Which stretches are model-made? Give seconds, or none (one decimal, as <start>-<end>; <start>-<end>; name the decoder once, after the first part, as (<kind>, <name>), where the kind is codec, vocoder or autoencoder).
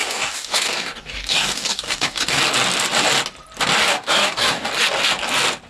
0.0-2.4 (codec, DAC); 3.8-4.7